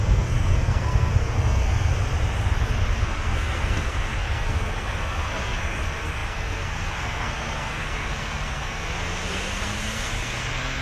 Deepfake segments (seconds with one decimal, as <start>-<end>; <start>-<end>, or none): 0.0-1.9; 3.0-10.8